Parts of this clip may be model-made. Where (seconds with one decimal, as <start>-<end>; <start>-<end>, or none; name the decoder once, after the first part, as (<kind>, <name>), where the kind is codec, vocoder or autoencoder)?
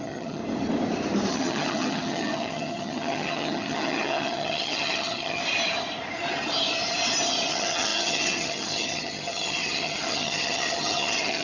0.0-0.4 (vocoder, HiFi-GAN); 1.3-5.4; 7.5-11.4